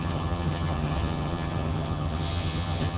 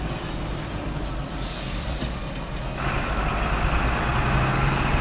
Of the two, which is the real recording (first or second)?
second